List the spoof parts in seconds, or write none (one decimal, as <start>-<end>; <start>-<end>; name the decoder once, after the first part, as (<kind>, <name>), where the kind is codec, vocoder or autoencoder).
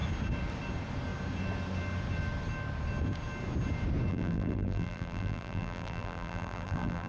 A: 4.1-7.1 (vocoder, BigVGAN v2)